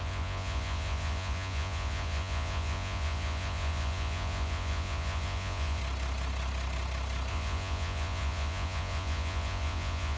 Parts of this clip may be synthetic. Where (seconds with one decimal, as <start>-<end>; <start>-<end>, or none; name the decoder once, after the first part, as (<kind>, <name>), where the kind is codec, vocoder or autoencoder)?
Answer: 0.0-5.8 (vocoder, Vocos); 7.3-10.2